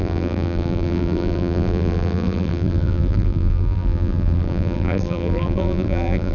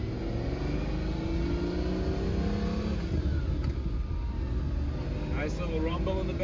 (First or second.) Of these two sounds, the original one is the second